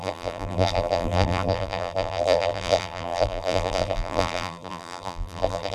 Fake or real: fake